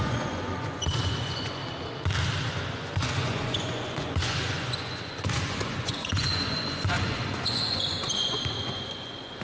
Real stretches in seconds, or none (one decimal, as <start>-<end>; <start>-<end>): 1.6-2.5